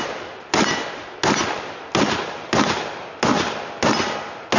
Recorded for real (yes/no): yes